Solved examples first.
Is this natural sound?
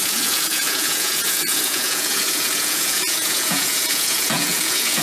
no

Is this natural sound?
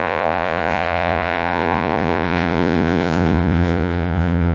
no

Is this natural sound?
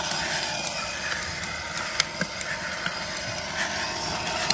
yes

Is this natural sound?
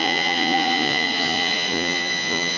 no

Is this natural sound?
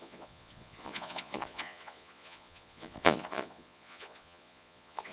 no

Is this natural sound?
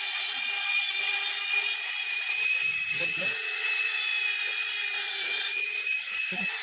no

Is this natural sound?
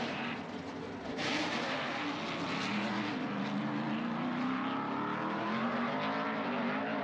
yes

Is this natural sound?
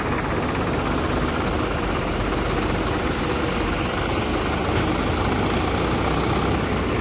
yes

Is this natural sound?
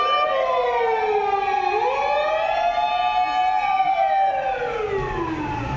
yes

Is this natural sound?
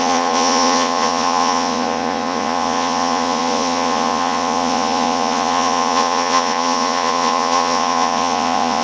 no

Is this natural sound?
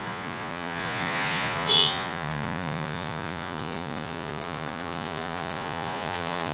no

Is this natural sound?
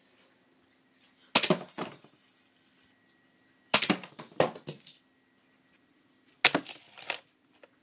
yes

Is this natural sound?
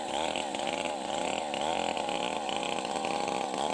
yes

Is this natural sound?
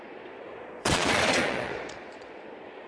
no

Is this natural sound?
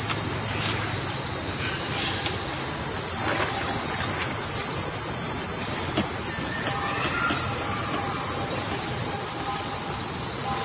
yes